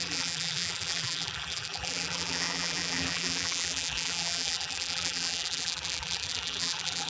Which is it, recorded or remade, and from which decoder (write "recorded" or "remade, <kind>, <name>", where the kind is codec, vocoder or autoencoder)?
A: remade, vocoder, BigVGAN v2